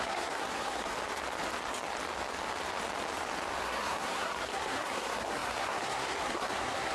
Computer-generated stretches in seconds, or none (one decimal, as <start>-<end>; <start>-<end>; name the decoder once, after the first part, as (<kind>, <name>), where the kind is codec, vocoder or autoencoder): 0.0-0.9 (codec, SNAC); 3.6-6.9